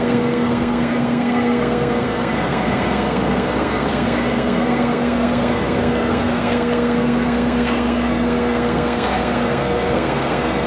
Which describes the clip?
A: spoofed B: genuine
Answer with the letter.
A